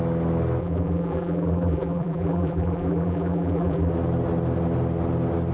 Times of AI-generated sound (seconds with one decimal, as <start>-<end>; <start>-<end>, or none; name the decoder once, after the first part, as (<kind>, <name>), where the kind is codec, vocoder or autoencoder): 0.6-3.9 (vocoder, BigVGAN v2)